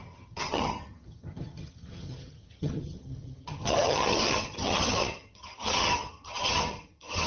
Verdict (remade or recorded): remade